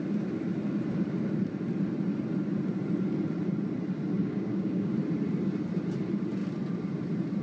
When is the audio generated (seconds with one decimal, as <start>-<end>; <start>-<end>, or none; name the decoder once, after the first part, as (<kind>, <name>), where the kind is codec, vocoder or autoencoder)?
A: 4.2-4.9 (codec, DAC)